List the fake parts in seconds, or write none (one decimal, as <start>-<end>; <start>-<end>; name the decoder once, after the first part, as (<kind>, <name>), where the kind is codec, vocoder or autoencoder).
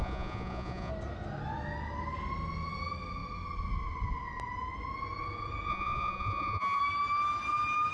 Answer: 0.0-0.9 (vocoder, Vocos); 5.7-6.8